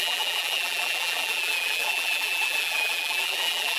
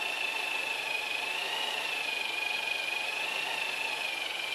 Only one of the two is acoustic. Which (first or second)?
second